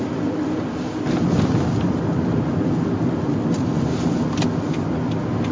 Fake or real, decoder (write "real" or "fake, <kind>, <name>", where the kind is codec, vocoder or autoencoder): real